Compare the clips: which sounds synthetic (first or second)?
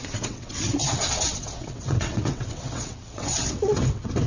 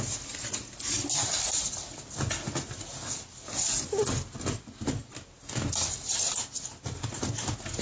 first